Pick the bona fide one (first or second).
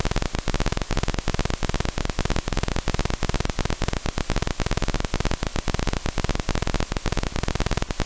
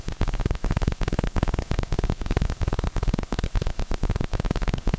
first